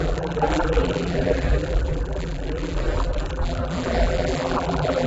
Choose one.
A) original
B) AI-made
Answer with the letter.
B